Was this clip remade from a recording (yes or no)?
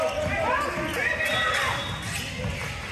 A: no